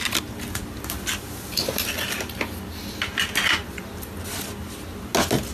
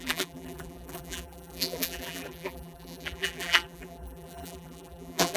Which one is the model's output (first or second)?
second